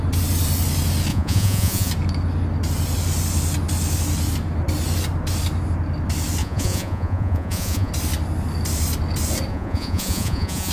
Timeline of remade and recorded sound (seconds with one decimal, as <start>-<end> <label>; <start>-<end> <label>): 0.0-1.1 recorded; 1.1-1.9 remade; 1.9-6.4 recorded; 6.4-7.9 remade; 7.9-9.5 recorded; 9.5-10.7 remade